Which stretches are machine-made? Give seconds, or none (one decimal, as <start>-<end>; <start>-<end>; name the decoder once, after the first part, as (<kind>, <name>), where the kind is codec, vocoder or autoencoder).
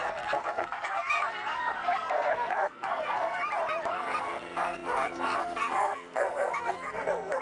0.0-3.4 (codec, SNAC); 3.9-7.4